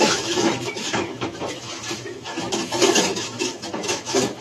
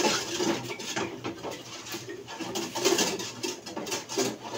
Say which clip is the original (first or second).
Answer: second